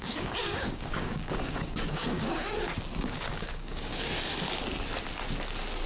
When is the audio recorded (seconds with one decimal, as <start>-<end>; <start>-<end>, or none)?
2.3-3.0; 4.1-5.9